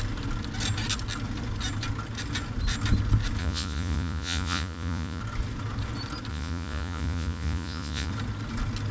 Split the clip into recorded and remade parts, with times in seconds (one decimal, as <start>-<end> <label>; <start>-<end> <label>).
0.0-3.4 recorded; 3.4-5.2 remade; 5.2-6.3 recorded; 6.3-8.1 remade; 8.1-8.9 recorded